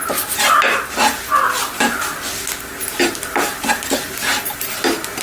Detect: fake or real real